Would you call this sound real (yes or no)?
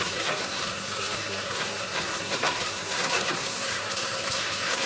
no